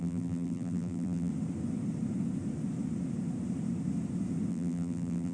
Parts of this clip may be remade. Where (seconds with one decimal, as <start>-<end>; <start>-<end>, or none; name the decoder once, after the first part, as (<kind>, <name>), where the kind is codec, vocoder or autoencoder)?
0.0-1.3 (vocoder, BigVGAN v2); 4.5-5.3